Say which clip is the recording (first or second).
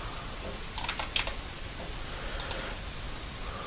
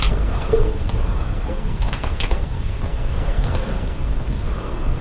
first